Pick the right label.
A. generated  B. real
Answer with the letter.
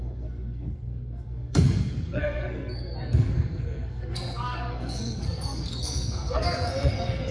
A